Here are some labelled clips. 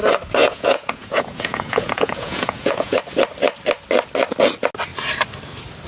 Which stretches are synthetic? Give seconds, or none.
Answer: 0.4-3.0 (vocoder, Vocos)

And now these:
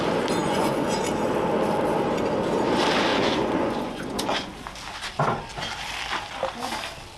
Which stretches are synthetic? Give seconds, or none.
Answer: 0.4-1.0 (vocoder, Vocos); 3.1-4.5